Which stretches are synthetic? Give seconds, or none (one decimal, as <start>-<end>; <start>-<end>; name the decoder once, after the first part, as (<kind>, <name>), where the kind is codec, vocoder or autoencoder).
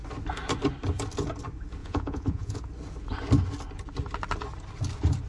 1.8-2.6 (vocoder, Vocos)